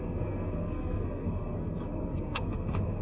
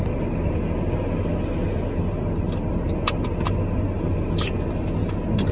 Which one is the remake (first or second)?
first